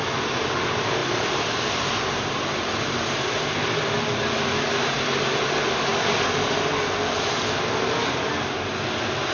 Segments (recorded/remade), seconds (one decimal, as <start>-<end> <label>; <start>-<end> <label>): 0.0-1.0 recorded; 1.0-3.7 remade; 3.7-9.3 recorded